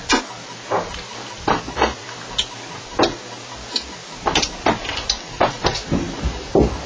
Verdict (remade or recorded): recorded